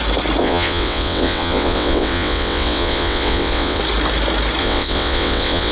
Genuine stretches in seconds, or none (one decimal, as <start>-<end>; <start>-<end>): 0.0-0.4; 3.8-4.6